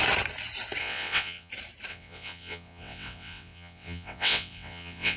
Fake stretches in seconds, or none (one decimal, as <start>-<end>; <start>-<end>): 0.8-1.5; 1.9-5.2

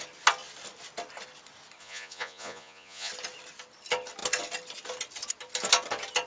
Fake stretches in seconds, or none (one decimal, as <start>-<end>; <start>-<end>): 1.8-3.1

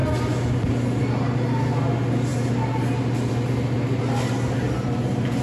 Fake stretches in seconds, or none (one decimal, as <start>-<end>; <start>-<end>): none

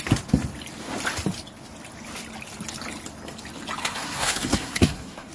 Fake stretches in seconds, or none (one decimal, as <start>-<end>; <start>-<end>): 3.8-5.3